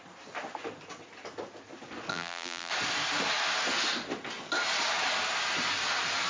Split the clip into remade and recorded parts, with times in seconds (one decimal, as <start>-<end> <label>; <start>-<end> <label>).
0.0-2.1 recorded; 2.1-2.7 remade; 2.7-6.3 recorded